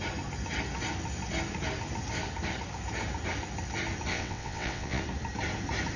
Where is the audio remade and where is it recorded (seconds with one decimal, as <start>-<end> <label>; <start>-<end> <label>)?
0.0-4.1 recorded; 4.1-5.0 remade; 5.0-6.0 recorded